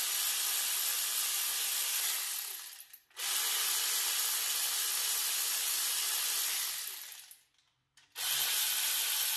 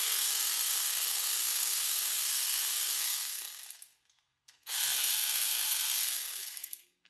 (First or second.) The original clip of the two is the first